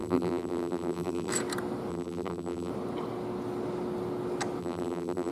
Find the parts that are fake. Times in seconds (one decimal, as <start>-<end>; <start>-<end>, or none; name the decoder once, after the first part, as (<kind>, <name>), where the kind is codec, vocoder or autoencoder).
0.0-1.3 (vocoder, BigVGAN v2); 1.9-2.7; 4.6-5.3